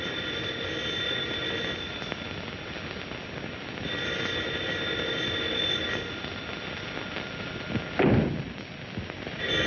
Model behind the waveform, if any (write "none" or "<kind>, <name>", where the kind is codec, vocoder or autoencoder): none